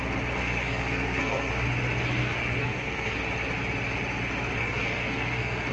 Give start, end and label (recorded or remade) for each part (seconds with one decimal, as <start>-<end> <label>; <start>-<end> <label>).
0.0-0.4 recorded; 0.4-1.5 remade; 1.5-2.2 recorded; 2.2-3.2 remade; 3.2-4.6 recorded; 4.6-5.7 remade